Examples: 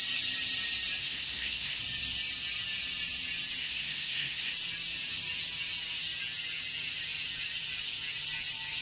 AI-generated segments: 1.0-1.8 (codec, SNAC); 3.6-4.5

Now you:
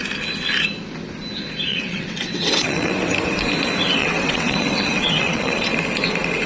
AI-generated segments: 1.7-2.9 (vocoder, WaveNeXt); 4.0-5.7

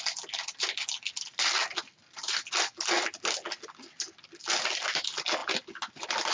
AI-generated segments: none